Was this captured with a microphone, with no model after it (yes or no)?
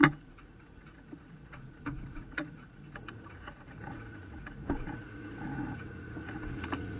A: no